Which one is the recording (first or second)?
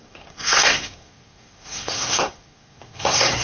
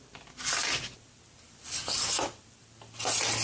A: second